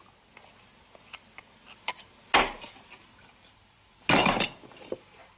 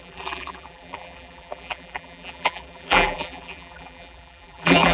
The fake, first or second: second